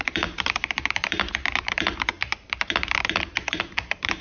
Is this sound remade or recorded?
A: remade